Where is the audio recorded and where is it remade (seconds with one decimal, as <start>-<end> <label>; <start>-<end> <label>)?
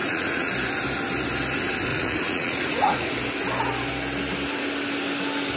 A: 0.0-0.5 remade; 0.5-1.9 recorded; 1.9-3.1 remade; 3.1-5.6 recorded